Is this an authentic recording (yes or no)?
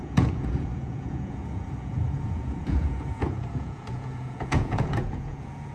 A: no